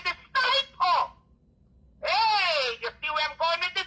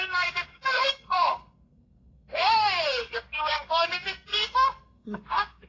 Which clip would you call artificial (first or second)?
second